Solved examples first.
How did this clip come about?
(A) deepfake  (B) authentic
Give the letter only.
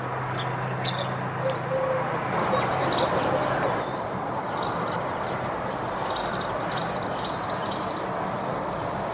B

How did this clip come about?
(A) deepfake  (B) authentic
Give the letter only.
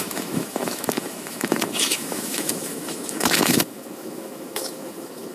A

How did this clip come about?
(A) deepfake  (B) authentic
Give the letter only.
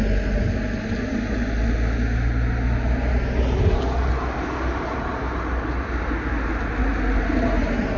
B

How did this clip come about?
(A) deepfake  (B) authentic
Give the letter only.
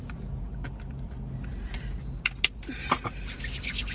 B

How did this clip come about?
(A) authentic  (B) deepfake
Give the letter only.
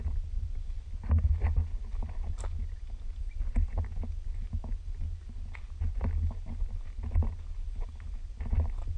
A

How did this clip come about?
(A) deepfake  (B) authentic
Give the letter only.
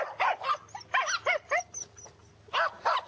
B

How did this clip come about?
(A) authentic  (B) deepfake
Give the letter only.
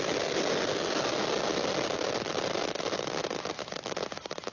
A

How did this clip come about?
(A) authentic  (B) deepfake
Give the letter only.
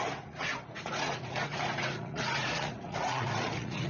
B